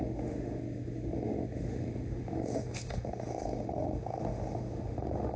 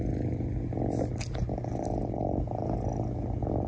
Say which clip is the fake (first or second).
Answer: first